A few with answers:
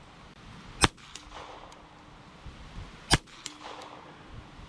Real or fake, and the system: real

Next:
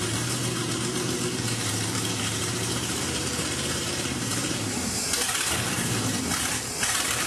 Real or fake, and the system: fake, vocoder, BigVGAN v2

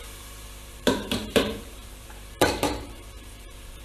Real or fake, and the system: fake, vocoder, BigVGAN v2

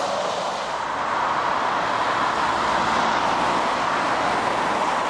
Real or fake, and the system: real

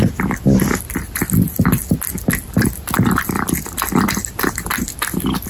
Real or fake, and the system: real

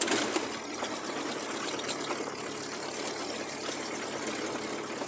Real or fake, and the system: real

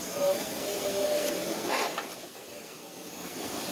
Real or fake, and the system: fake, codec, SNAC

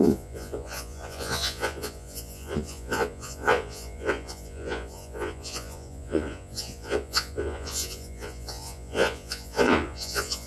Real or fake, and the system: fake, vocoder, Vocos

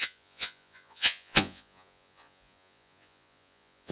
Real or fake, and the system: fake, vocoder, Vocos